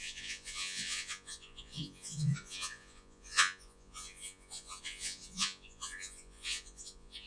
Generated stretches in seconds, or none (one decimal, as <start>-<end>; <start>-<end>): 0.0-7.3